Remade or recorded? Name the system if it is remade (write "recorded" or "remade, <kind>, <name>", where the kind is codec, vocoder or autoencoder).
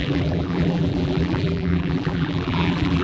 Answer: remade, vocoder, BigVGAN v2